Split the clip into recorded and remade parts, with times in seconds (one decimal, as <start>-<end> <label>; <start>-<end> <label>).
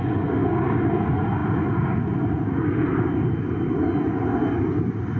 0.0-5.2 recorded